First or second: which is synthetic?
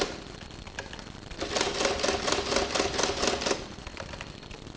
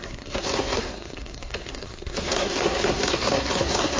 second